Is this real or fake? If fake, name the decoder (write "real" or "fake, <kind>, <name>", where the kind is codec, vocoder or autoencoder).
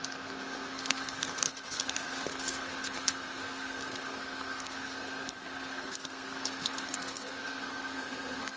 fake, codec, SNAC